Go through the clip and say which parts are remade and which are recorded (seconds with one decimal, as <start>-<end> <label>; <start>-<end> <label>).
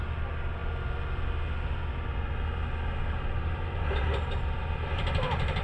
0.0-3.0 recorded; 3.0-5.6 remade